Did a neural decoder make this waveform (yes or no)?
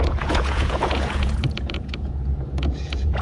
yes